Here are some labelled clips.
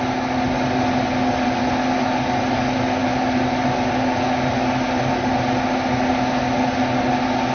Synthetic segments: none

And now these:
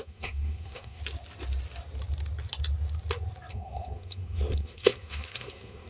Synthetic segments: 0.0-1.0 (codec, SNAC); 3.5-5.9

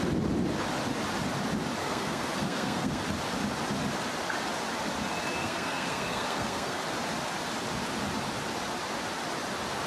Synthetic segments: 1.8-3.0 (codec, SNAC); 5.4-6.8

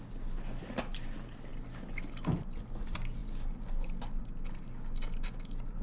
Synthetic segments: none

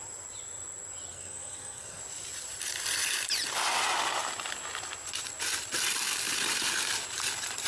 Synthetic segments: 1.1-2.0 (codec, SNAC)